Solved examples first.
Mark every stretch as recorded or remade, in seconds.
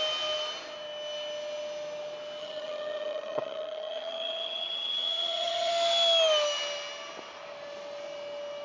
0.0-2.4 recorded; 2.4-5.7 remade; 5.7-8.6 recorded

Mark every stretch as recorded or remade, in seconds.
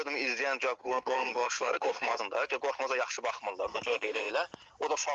0.0-0.8 recorded; 0.8-2.2 remade; 2.2-3.7 recorded; 3.7-4.3 remade; 4.3-5.1 recorded